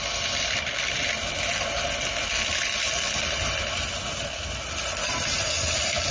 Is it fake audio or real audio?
real